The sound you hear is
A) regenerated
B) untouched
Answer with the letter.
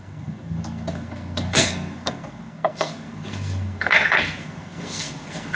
A